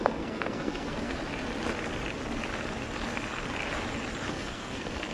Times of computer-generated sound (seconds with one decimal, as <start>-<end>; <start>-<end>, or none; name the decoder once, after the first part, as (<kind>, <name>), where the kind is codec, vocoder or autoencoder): 0.0-1.2 (codec, SNAC); 4.3-5.1